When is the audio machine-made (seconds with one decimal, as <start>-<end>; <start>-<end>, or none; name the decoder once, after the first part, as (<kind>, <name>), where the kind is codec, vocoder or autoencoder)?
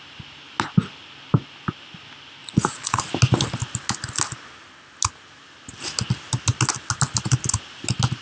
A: 2.4-3.0 (vocoder, Vocos)